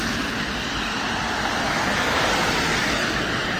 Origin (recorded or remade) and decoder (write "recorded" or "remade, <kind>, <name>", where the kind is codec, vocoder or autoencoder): remade, vocoder, BigVGAN v2